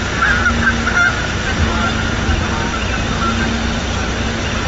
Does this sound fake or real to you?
real